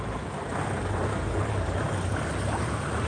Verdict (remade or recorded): recorded